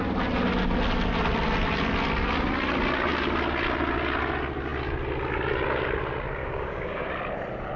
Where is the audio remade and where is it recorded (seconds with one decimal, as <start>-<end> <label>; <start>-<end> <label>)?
0.0-6.4 recorded; 6.4-7.1 remade; 7.1-7.8 recorded